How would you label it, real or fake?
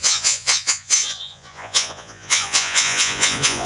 fake